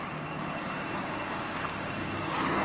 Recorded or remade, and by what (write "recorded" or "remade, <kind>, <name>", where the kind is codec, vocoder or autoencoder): remade, codec, DAC